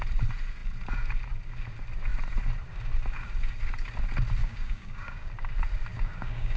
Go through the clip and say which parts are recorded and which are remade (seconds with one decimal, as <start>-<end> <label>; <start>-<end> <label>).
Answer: 0.0-4.4 recorded; 4.4-5.3 remade; 5.3-5.9 recorded; 5.9-6.6 remade